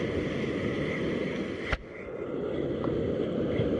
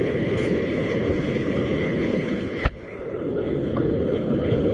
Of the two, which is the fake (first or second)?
second